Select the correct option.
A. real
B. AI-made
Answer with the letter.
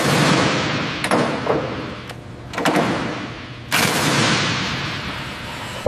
A